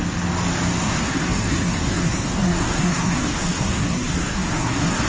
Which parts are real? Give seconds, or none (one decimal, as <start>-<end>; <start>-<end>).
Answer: 0.0-0.8